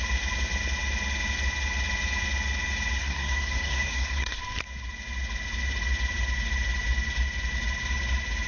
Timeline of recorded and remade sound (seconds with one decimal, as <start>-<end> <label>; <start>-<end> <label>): 0.0-3.0 recorded; 3.0-4.4 remade; 4.4-8.5 recorded